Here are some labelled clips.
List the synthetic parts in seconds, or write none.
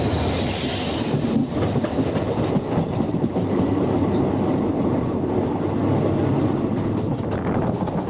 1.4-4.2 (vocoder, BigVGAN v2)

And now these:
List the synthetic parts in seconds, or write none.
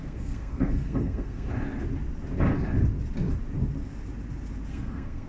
0.0-1.5 (codec, SNAC); 4.7-5.3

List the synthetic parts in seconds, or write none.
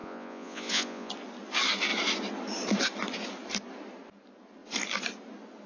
0.0-1.1 (vocoder, Vocos)